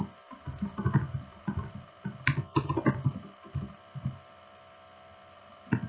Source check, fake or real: real